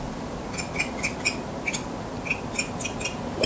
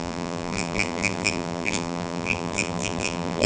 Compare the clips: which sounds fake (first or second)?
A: second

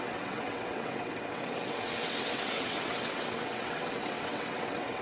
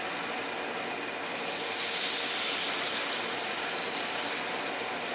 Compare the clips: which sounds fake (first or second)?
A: first